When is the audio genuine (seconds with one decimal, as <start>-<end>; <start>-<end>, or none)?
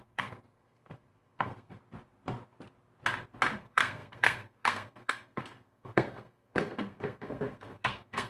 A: 1.8-3.6